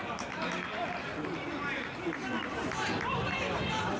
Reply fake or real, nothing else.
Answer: real